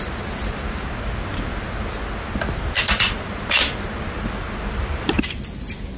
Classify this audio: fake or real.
real